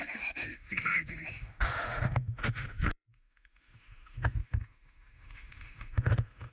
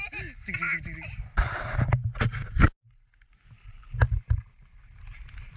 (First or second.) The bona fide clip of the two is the second